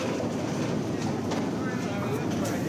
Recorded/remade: recorded